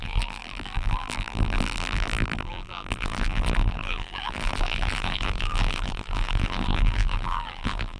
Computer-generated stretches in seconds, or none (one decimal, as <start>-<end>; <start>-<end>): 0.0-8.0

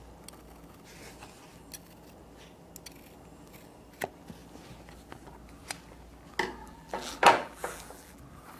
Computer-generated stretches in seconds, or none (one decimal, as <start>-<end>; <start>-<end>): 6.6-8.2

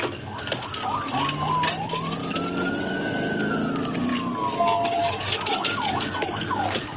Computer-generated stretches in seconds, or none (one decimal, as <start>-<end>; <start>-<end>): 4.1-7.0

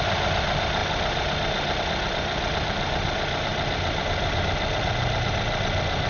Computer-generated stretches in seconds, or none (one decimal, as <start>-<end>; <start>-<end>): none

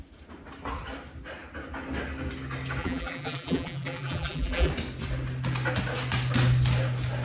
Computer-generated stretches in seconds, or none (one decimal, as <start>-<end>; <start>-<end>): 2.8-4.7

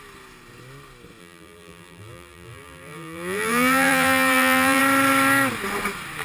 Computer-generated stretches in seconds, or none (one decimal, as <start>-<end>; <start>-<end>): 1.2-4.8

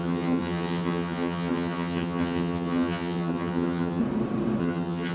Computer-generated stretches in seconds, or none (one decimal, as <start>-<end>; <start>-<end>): 0.0-4.0; 4.6-5.1